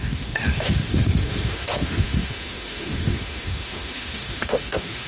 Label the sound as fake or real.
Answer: fake